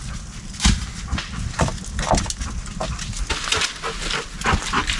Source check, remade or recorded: recorded